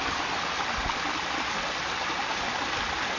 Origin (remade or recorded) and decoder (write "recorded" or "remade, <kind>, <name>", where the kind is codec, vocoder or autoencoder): recorded